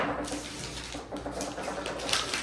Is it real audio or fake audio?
real